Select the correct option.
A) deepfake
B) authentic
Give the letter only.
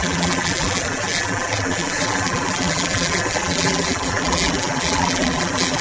A